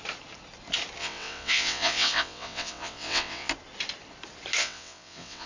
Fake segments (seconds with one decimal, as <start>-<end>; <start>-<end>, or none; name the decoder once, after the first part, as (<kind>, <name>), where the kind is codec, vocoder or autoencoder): 1.0-3.5 (vocoder, WaveNeXt); 4.6-5.5